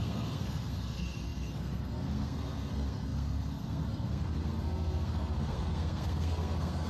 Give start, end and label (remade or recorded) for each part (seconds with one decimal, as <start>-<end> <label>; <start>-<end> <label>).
0.0-6.9 remade